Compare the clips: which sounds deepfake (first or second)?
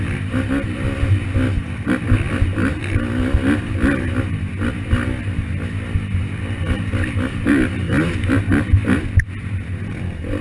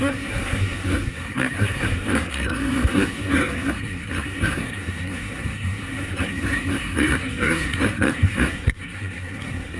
second